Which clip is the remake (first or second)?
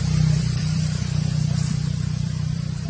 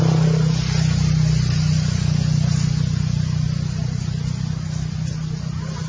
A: first